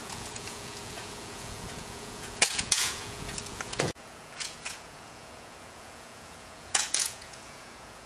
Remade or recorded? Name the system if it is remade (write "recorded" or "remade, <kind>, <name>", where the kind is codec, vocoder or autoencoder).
remade, vocoder, Vocos